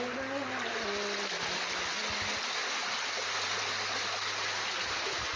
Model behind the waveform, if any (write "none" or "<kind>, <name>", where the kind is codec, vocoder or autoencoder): none